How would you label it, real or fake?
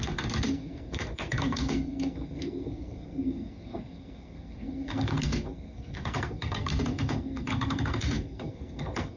fake